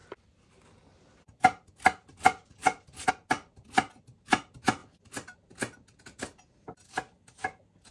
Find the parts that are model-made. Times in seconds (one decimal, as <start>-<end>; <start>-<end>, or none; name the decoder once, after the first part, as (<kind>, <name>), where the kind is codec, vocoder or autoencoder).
0.0-3.1 (vocoder, BigVGAN v2)